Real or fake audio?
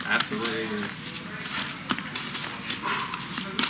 real